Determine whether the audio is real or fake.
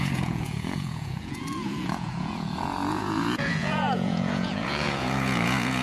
fake